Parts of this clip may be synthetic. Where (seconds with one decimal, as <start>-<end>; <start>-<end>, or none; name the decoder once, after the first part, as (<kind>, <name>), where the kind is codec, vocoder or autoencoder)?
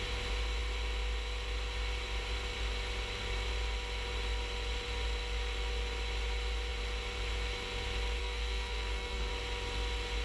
8.2-9.3 (codec, SNAC)